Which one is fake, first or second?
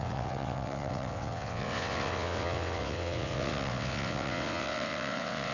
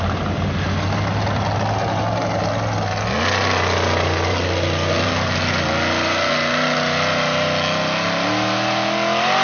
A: first